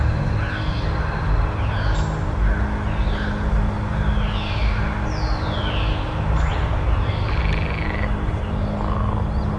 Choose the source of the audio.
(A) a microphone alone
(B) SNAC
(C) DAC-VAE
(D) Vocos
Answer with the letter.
A